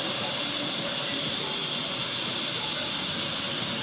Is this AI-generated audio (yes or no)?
no